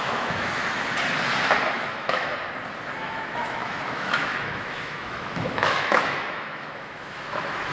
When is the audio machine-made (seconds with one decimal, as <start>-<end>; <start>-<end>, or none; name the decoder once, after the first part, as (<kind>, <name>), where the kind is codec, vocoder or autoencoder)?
0.0-0.6 (autoencoder, DAC-VAE); 1.7-2.3; 3.0-7.7